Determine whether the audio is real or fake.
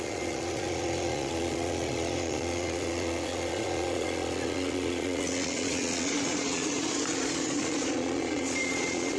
fake